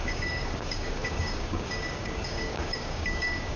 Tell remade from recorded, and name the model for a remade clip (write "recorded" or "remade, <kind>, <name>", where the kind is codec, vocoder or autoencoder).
remade, codec, DAC